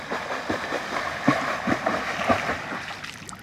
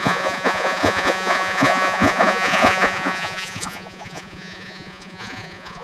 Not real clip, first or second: second